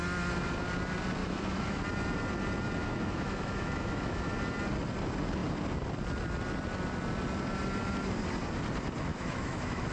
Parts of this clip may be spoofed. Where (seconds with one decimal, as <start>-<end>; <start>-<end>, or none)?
1.2-1.8; 2.8-4.3; 9.1-9.9